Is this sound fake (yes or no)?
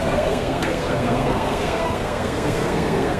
yes